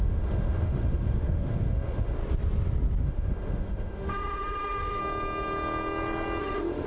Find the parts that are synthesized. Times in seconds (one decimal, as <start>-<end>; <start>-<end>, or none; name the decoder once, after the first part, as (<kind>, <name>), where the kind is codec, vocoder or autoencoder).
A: 0.0-2.2 (autoencoder, DAC-VAE); 3.0-5.0; 6.4-6.9